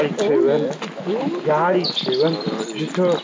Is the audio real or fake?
real